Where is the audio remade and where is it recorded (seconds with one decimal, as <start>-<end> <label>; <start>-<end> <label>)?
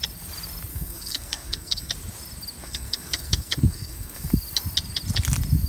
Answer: 0.0-0.7 recorded; 0.7-1.9 remade; 1.9-2.6 recorded; 2.6-4.3 remade; 4.3-5.7 recorded